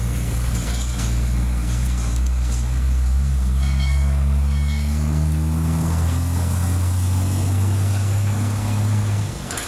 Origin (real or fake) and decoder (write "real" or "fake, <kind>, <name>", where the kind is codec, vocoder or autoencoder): fake, codec, SNAC